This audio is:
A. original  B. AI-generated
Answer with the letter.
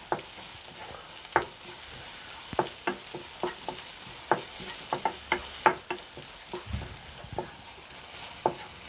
A